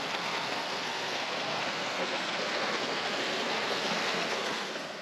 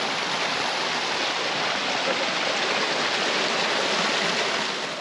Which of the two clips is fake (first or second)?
first